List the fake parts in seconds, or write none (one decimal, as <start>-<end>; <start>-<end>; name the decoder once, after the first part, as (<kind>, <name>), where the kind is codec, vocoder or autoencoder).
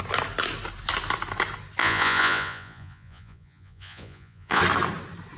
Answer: 1.8-4.6 (vocoder, Vocos)